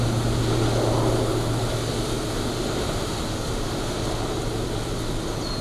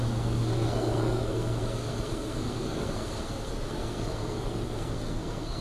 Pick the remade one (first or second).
second